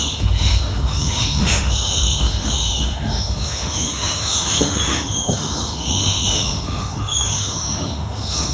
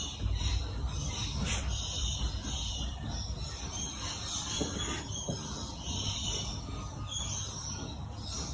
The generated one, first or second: first